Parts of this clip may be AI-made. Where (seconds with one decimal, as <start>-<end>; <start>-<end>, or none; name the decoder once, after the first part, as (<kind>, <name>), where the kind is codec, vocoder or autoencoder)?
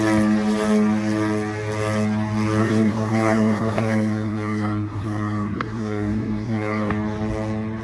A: 2.6-6.9 (codec, SNAC)